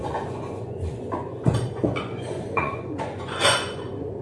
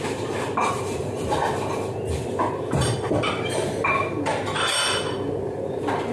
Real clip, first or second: second